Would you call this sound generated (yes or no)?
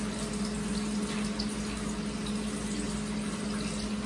no